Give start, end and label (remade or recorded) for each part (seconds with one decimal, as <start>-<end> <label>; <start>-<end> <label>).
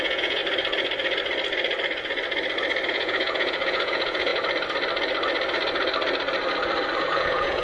0.0-0.4 remade; 0.4-2.9 recorded; 2.9-4.3 remade; 4.3-7.0 recorded; 7.0-7.6 remade